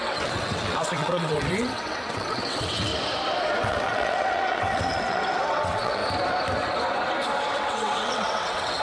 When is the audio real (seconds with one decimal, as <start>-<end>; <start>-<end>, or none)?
2.9-3.6; 6.0-7.5